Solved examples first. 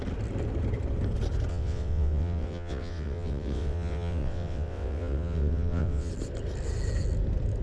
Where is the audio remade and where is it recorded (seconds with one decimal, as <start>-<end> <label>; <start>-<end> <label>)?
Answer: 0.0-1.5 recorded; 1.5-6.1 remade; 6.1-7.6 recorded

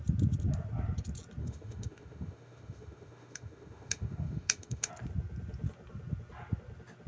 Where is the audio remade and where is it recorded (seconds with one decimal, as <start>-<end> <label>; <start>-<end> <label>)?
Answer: 0.0-1.4 recorded; 1.4-4.9 remade; 4.9-7.1 recorded

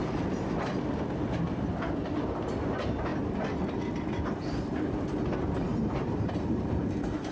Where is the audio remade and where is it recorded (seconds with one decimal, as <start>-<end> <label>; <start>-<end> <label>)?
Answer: 0.0-5.7 recorded; 5.7-6.6 remade; 6.6-7.3 recorded

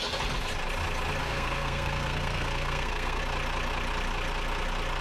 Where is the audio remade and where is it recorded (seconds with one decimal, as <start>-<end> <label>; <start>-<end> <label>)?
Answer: 0.0-1.2 recorded; 1.2-3.2 remade; 3.2-5.0 recorded

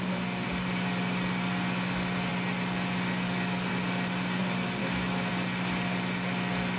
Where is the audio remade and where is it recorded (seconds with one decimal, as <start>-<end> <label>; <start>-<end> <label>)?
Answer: 0.0-4.8 recorded; 4.8-5.3 remade; 5.3-6.8 recorded

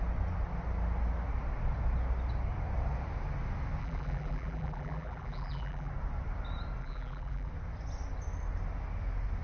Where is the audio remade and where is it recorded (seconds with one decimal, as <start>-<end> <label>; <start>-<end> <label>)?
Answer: 0.0-3.8 recorded; 3.8-5.9 remade; 5.9-6.8 recorded; 6.8-7.5 remade; 7.5-9.4 recorded